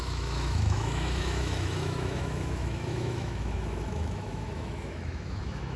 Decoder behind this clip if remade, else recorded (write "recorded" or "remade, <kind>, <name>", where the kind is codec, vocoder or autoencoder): remade, autoencoder, DAC-VAE